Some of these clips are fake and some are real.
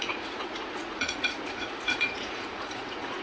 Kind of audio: fake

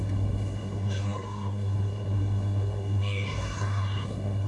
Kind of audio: fake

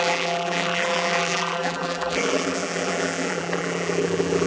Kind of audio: fake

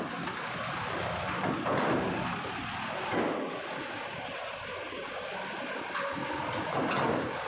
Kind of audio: real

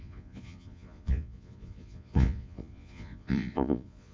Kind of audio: fake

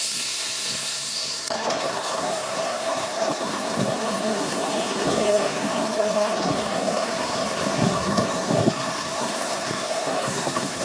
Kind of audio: fake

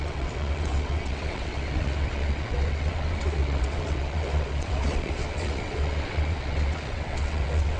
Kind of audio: fake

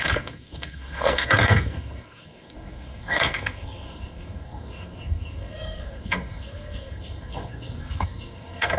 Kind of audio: fake